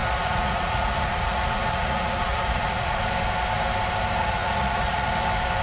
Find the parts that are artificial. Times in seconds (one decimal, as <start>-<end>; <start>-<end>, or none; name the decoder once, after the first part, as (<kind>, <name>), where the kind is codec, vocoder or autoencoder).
0.0-3.0 (vocoder, Vocos); 4.2-5.1